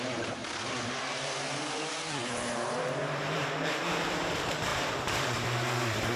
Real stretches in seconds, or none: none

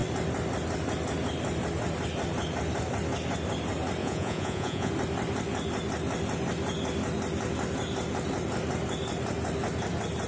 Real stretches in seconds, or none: 0.0-4.0; 4.9-10.3

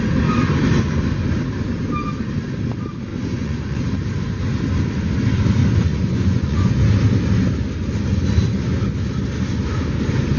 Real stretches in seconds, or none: 0.0-3.1; 3.8-5.7; 6.7-10.4

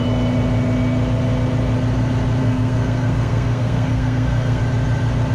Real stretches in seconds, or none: 0.0-2.4; 4.6-5.3

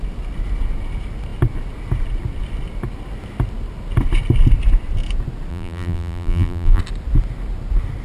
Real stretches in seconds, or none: 0.0-5.5; 6.8-8.0

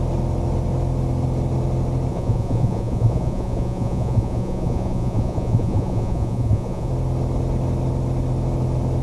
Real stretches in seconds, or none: 0.0-2.1; 6.9-9.0

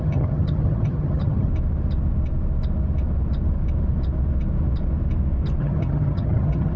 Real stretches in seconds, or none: 1.5-5.6

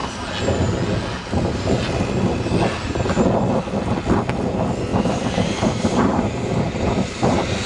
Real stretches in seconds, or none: 0.0-4.9; 6.3-7.7